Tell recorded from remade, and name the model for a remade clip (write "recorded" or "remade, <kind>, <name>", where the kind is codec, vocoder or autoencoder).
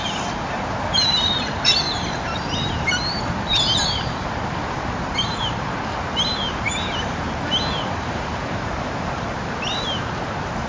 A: remade, vocoder, BigVGAN v2